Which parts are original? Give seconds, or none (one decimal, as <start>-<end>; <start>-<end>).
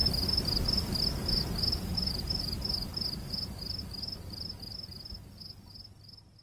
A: 0.0-1.9; 2.4-6.4